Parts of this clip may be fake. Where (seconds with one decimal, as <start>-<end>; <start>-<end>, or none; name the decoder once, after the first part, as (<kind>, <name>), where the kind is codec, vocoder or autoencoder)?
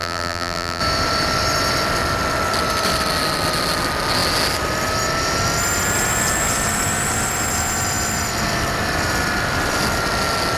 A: 0.0-0.8 (vocoder, BigVGAN v2)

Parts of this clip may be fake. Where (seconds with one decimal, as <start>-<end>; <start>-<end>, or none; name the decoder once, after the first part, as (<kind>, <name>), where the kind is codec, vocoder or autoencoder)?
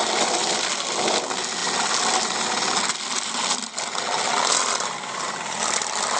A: 0.0-0.5 (vocoder, BigVGAN v2)